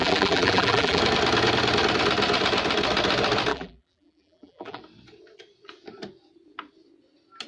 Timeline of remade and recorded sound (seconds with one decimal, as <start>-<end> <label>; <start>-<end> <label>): 0.0-1.0 remade; 1.0-3.5 recorded; 3.5-4.8 remade; 4.8-7.5 recorded